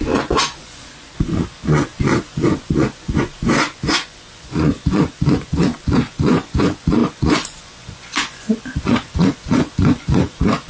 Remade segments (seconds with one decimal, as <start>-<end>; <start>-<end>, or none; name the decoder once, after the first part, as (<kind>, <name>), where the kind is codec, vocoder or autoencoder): 0.0-10.7 (vocoder, Vocos)